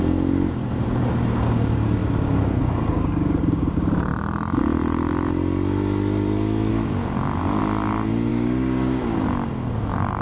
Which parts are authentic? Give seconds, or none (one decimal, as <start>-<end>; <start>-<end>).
4.1-6.7; 7.6-8.3